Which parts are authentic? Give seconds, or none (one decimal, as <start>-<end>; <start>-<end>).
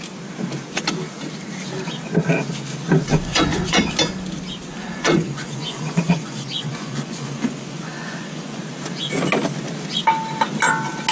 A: 0.0-3.1; 3.8-4.8; 8.6-11.1